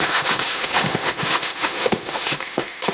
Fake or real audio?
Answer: fake